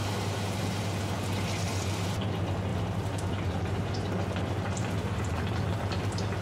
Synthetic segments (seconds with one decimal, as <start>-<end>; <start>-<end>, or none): 0.0-1.0; 2.7-5.2